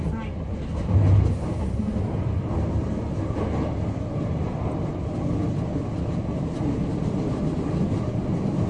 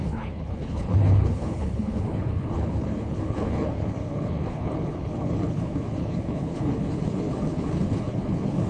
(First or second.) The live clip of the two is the first